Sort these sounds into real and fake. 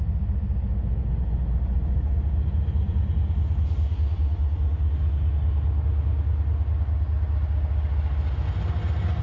real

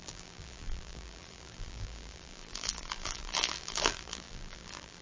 fake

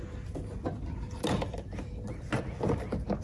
real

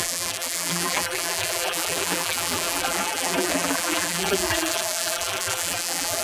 fake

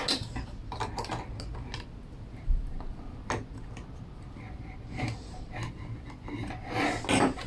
real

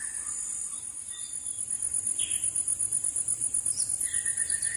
real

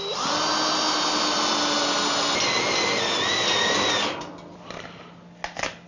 real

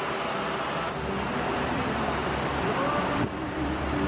real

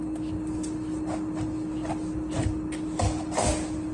real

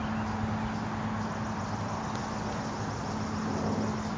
real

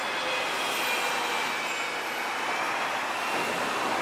real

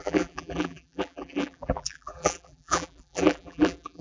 fake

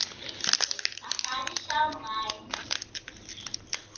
real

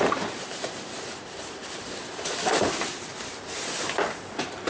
fake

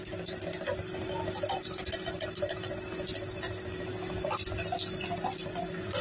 real